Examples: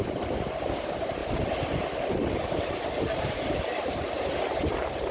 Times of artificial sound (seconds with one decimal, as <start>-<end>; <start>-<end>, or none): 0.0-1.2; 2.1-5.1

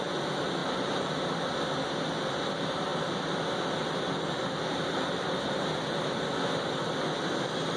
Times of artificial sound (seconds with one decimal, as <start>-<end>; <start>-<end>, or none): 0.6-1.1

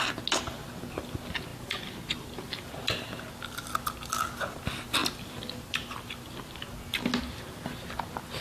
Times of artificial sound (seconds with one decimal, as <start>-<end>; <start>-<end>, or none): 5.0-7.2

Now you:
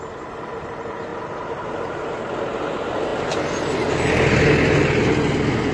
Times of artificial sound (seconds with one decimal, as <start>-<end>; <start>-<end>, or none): 1.1-2.1

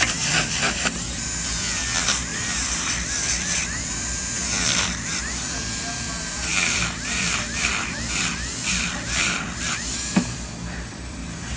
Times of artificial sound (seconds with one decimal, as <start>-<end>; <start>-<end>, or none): 0.0-7.7; 8.7-11.6

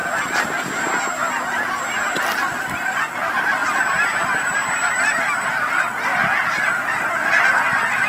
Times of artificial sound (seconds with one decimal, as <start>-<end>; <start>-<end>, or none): 2.7-8.1